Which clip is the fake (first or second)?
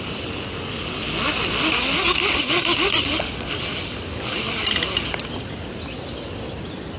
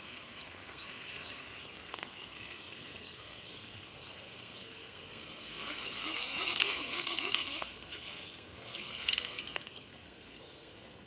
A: second